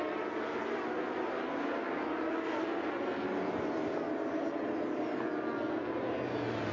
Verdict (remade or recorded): recorded